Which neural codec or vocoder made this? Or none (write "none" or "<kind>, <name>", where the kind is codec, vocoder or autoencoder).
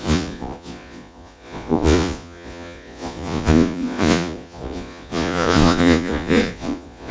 vocoder, Vocos